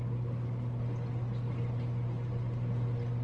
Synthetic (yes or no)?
no